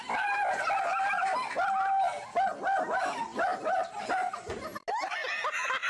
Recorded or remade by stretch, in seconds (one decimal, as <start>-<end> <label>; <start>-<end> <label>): 0.0-5.9 recorded